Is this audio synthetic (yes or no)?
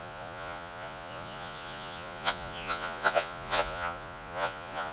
yes